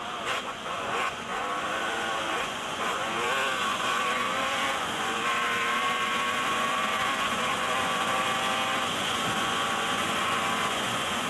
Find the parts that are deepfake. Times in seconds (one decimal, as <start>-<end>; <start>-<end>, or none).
0.0-11.3